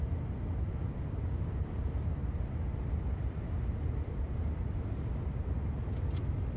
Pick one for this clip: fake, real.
fake